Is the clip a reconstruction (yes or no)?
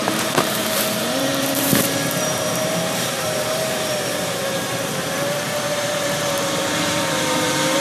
yes